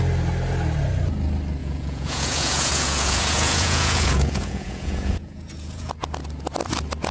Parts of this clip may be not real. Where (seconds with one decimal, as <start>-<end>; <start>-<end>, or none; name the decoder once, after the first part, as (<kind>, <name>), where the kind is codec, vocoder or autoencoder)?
1.6-5.9 (vocoder, Vocos)